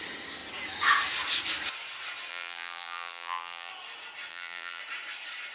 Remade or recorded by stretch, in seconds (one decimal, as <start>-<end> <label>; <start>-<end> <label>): 0.0-2.3 recorded; 2.3-3.7 remade; 3.7-4.3 recorded; 4.3-4.8 remade; 4.8-5.5 recorded